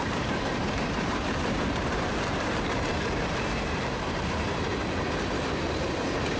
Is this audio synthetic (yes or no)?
yes